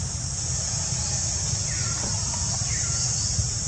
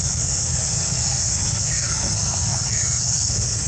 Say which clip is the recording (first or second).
first